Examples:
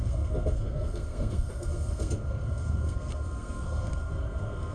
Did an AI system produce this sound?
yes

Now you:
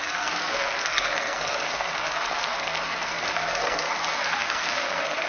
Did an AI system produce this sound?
yes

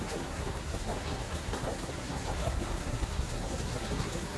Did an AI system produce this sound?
yes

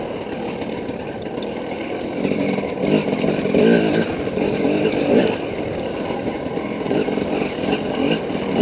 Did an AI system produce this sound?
no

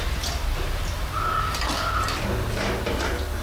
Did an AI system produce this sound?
no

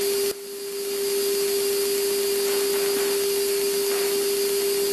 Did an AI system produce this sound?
no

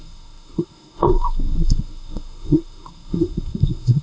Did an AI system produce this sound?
yes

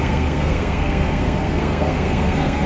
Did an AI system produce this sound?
yes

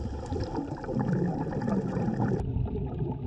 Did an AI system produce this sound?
no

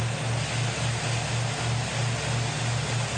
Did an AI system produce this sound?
no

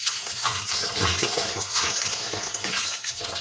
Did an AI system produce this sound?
yes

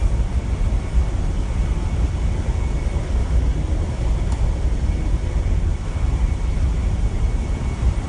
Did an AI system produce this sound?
no